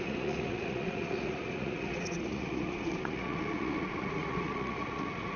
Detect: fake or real fake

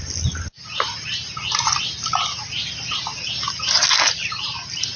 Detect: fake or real real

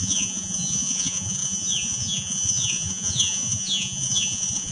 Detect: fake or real fake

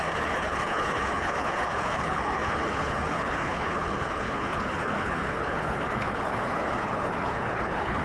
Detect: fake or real fake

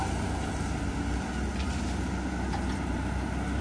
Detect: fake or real real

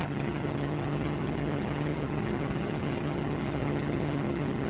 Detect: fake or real fake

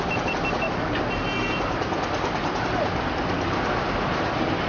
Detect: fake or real real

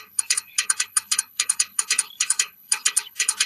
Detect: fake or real fake